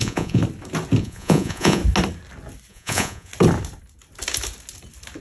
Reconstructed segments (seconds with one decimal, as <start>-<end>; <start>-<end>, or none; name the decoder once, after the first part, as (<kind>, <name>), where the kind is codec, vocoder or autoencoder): 0.0-0.4 (vocoder, Vocos); 1.0-1.8; 2.7-3.3